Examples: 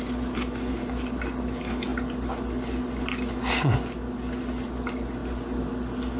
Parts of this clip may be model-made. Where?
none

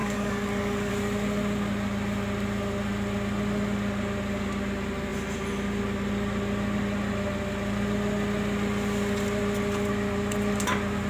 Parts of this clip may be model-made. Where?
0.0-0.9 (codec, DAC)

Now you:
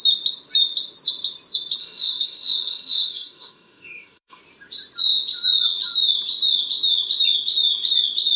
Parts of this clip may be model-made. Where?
1.8-4.4 (codec, DAC)

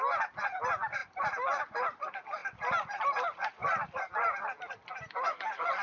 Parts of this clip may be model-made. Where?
none

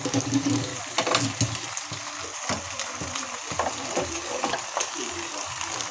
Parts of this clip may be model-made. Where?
0.0-0.7 (codec, DAC); 4.1-5.9

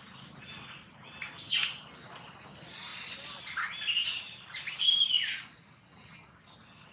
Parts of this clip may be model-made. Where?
none